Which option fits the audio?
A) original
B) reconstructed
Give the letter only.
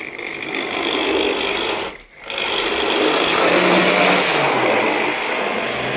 A